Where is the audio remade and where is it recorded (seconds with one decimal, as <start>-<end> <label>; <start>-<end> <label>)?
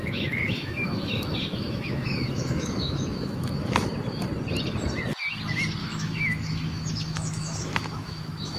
0.0-3.7 remade; 3.7-5.8 recorded; 5.8-8.6 remade